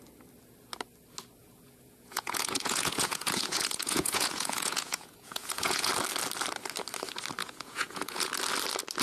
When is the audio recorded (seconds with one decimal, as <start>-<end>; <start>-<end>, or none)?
0.0-1.4; 5.9-7.4; 8.3-9.0